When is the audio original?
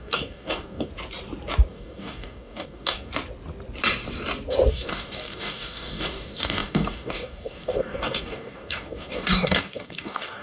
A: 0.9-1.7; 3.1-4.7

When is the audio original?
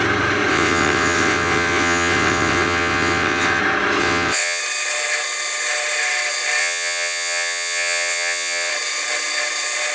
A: 0.0-0.5; 3.6-4.0; 4.6-6.6; 8.7-9.9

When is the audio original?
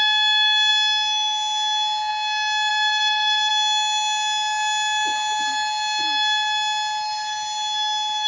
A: 0.0-2.7; 3.5-8.3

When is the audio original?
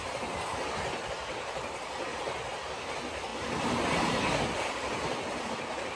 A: 0.0-6.0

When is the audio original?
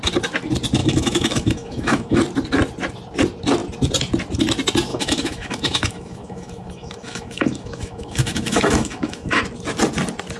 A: 0.0-0.8; 2.2-4.9; 9.4-10.4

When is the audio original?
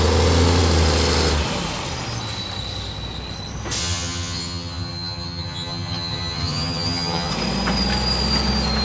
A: 0.0-3.8; 7.3-8.8